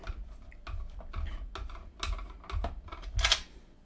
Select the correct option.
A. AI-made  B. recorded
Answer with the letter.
B